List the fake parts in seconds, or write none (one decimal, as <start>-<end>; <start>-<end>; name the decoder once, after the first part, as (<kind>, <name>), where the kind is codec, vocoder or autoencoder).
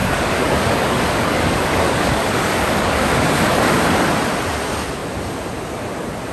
0.0-3.8 (codec, DAC)